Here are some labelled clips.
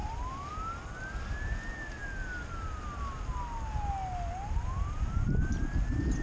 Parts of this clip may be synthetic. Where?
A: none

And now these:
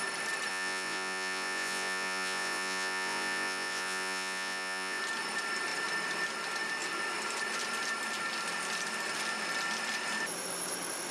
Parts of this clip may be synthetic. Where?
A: 0.5-5.0 (vocoder, Vocos)